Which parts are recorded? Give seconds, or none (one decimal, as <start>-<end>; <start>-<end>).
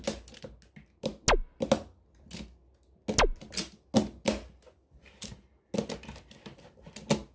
0.0-7.3